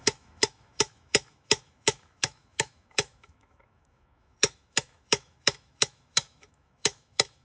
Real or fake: fake